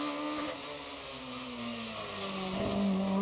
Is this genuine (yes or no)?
yes